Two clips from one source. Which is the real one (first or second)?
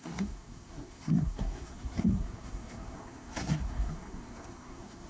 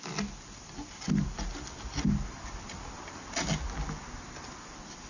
second